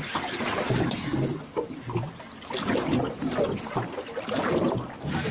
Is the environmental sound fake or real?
real